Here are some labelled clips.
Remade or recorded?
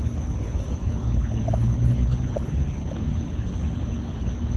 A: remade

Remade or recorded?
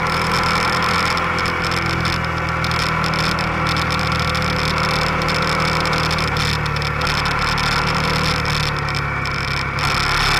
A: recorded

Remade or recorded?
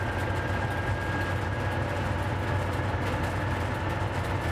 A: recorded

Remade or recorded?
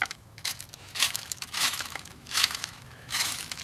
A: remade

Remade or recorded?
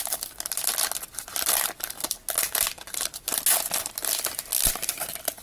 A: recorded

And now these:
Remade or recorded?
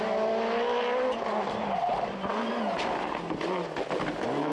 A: recorded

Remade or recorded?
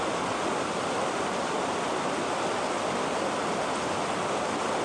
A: recorded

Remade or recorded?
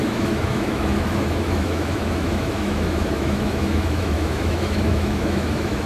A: remade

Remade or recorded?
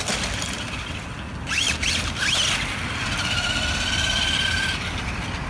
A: recorded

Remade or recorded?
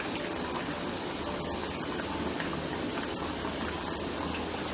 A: recorded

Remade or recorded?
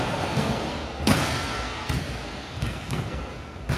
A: remade